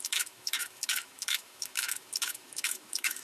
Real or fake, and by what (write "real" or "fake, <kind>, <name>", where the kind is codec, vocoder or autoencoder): fake, autoencoder, DAC-VAE